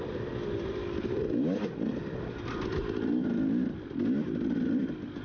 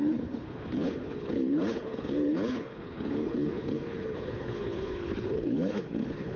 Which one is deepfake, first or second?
second